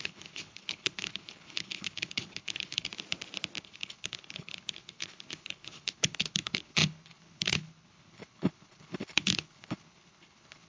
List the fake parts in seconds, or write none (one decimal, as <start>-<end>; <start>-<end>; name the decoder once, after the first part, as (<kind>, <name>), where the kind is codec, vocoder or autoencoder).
0.0-2.9 (codec, HILCodec); 3.6-10.7